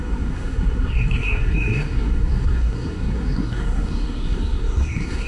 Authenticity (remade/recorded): remade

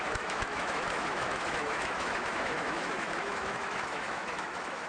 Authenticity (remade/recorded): remade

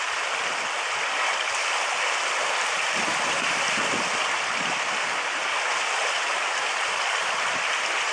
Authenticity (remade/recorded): recorded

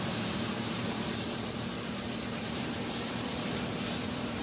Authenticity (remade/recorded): remade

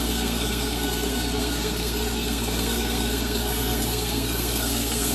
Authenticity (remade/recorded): remade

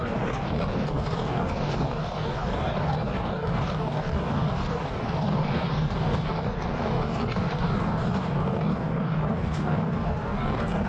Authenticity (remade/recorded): remade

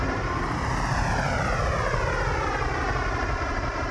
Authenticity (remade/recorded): remade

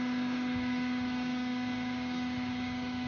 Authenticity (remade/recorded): remade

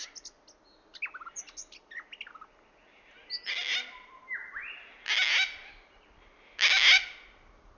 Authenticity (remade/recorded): recorded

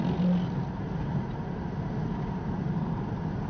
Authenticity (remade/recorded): recorded